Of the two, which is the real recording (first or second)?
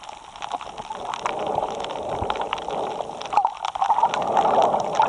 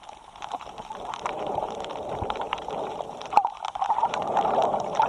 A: first